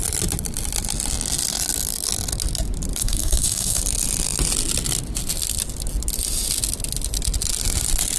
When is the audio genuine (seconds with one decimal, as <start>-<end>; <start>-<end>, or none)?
0.0-3.0; 3.8-8.2